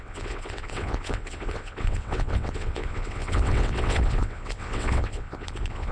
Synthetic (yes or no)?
yes